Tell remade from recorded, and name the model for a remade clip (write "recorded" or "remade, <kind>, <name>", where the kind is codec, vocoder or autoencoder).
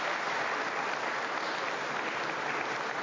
recorded